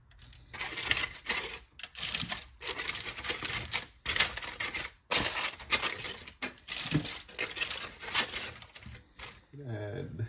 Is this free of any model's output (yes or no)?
yes